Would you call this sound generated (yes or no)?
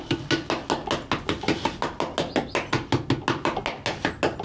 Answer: no